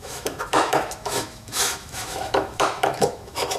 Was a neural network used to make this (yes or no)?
yes